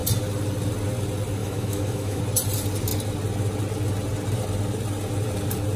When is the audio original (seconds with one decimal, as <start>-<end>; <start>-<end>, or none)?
0.0-1.4; 2.2-5.8